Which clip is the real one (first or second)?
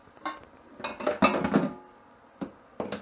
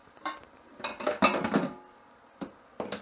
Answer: first